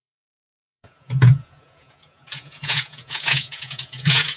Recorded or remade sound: remade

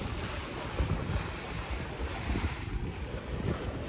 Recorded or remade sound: recorded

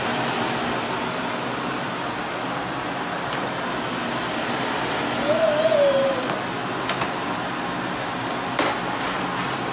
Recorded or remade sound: recorded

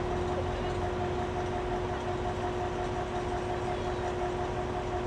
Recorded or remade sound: recorded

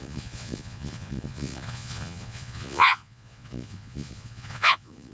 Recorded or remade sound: remade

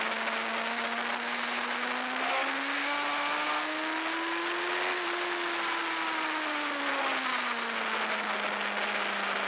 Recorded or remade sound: recorded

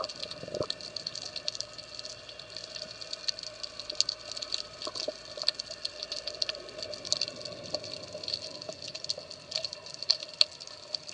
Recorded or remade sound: recorded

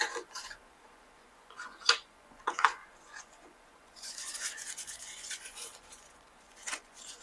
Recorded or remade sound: remade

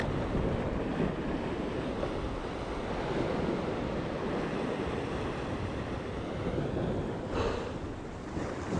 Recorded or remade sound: recorded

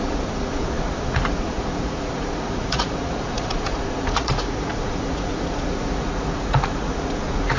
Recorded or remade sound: remade